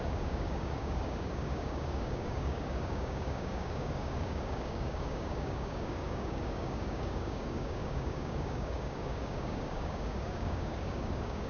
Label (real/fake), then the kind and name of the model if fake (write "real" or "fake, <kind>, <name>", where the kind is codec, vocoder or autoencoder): fake, codec, DAC